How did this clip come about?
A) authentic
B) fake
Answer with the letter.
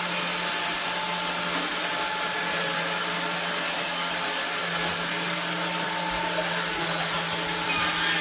A